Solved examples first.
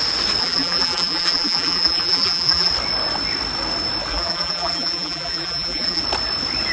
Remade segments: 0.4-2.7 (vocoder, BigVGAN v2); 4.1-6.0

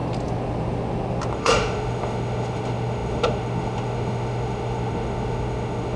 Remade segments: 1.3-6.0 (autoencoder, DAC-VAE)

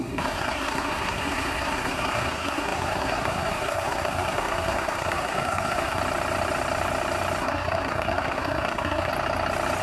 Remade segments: 0.0-6.0 (codec, SNAC); 7.4-9.1

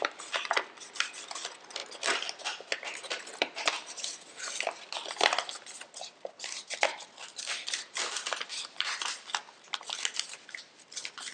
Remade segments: 0.0-11.3 (vocoder, BigVGAN v2)